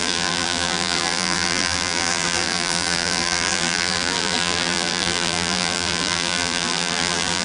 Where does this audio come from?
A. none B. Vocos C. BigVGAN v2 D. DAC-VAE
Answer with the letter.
C